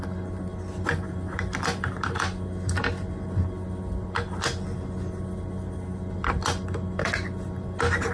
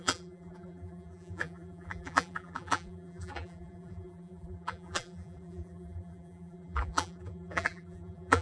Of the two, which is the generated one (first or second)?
second